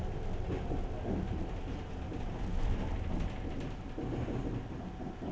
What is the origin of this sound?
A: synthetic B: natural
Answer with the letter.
B